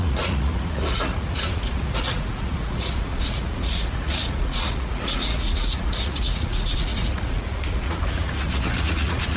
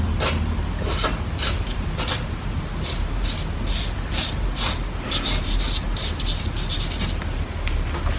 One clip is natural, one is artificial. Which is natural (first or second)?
second